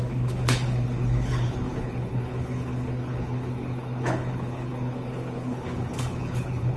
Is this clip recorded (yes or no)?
no